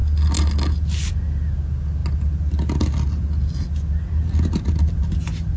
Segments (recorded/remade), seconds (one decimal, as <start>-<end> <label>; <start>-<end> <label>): 0.0-5.6 recorded